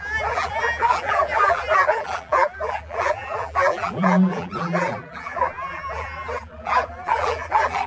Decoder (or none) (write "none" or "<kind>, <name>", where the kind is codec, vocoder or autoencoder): vocoder, BigVGAN v2